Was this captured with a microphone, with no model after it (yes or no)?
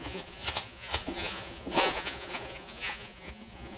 no